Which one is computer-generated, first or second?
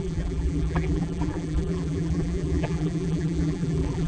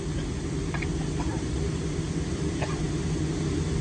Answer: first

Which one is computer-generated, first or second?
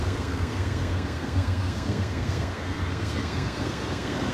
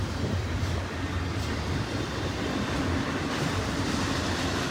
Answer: first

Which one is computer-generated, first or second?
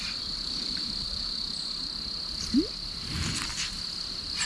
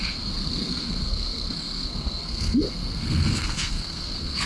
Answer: second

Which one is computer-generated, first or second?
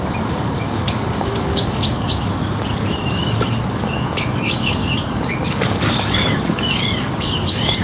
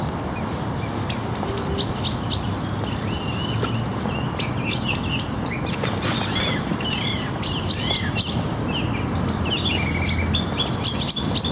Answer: first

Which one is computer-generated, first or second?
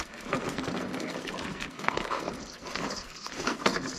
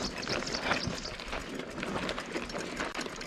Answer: first